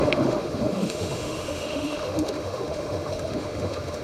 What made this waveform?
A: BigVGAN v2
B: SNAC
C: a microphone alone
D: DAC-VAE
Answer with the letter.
D